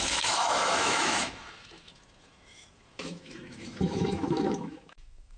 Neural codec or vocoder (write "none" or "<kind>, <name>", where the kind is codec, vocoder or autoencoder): autoencoder, DAC-VAE